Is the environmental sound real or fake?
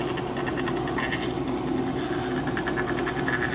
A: real